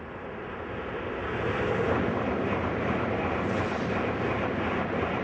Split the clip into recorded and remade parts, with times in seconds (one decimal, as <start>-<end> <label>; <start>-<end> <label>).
0.0-1.2 recorded; 1.2-4.1 remade; 4.1-5.2 recorded